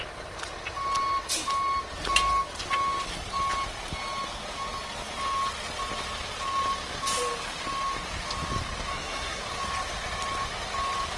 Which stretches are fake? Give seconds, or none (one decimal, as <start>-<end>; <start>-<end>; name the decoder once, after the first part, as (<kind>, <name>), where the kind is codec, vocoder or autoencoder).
8.9-9.4 (codec, SNAC)